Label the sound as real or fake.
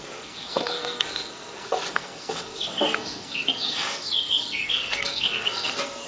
fake